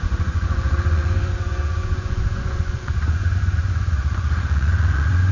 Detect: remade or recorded remade